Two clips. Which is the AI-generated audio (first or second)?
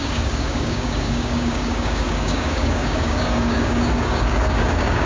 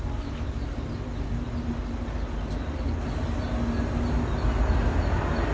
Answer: first